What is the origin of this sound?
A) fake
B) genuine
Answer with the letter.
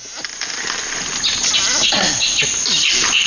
B